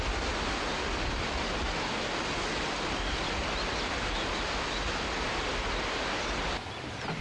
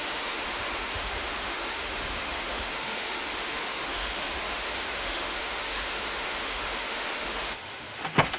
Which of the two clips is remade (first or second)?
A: second